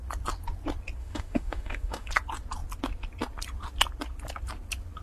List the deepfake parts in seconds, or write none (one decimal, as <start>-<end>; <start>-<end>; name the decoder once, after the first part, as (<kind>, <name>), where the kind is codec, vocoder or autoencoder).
1.0-2.1 (autoencoder, DAC-VAE)